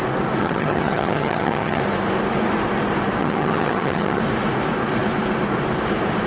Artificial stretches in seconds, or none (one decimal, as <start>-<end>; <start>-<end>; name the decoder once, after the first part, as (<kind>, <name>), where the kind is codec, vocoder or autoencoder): 0.4-1.8 (vocoder, HiFi-GAN); 3.2-4.2